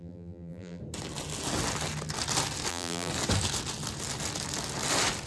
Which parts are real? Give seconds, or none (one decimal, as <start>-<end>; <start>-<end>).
0.8-2.7; 3.1-5.3